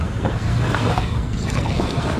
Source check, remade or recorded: remade